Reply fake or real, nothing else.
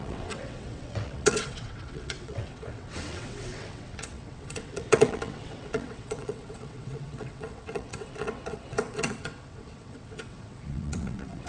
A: fake